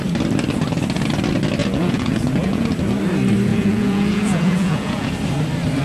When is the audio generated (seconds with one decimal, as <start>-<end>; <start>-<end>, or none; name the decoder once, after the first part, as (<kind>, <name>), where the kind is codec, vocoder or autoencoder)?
1.6-2.7 (vocoder, Vocos); 3.5-5.1